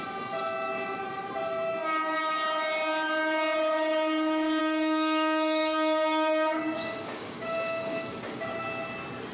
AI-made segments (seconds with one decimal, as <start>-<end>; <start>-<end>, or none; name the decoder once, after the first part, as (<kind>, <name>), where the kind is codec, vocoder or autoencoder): 4.6-8.2 (codec, DAC)

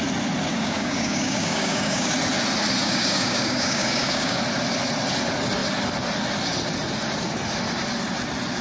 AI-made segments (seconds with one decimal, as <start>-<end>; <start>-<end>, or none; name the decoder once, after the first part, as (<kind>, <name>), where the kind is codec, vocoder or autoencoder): 0.5-2.1 (codec, DAC); 2.8-4.4

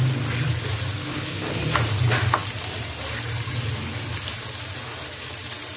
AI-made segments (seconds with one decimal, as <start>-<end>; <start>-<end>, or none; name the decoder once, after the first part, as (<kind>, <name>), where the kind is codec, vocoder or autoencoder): 0.9-1.6 (codec, DAC)

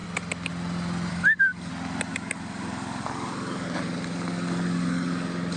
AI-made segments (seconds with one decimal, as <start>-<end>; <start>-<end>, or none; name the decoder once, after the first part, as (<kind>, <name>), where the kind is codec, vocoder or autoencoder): 1.1-1.7 (codec, DAC); 2.1-5.6

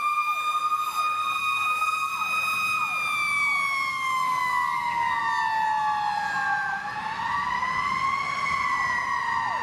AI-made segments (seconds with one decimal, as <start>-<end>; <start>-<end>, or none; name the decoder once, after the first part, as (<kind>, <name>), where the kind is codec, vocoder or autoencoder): 1.4-2.1 (codec, DAC); 3.9-5.2

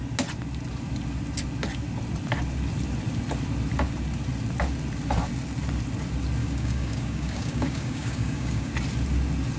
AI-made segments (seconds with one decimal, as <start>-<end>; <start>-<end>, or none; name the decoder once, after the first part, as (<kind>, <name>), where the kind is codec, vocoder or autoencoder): 6.4-8.7 (codec, DAC)

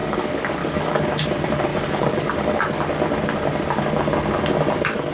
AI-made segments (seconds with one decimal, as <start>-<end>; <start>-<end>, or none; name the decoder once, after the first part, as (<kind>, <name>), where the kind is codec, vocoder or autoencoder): 0.0-1.0 (codec, DAC); 1.7-3.0

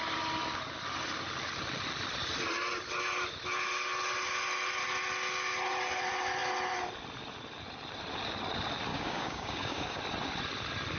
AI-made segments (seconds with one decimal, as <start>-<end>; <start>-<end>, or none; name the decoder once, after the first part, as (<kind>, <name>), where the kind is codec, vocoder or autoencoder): 8.9-10.0 (codec, DAC)